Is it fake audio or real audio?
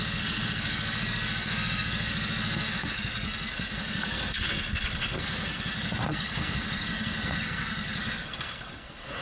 fake